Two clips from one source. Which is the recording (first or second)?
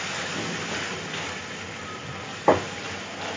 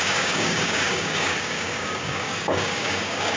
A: first